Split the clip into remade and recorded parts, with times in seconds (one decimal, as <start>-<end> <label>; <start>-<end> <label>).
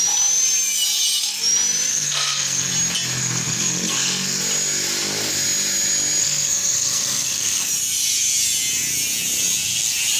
0.0-1.9 recorded; 1.9-2.7 remade; 2.7-3.2 recorded; 3.2-4.4 remade; 4.4-6.2 recorded; 6.2-7.7 remade; 7.7-10.2 recorded